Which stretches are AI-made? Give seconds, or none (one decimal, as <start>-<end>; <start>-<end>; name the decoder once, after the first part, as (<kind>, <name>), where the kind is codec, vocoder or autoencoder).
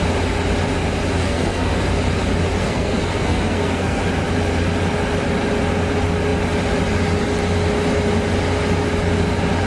1.2-1.9 (codec, SNAC); 2.6-4.0